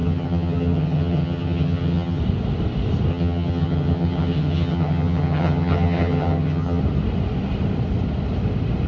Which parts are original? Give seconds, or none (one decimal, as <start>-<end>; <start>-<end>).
2.2-3.1; 6.8-8.9